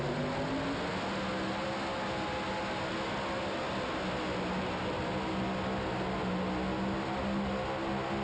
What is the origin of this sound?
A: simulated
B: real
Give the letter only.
B